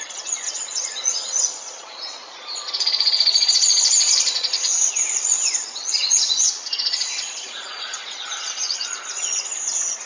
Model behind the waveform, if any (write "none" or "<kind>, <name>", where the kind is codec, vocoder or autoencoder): vocoder, Vocos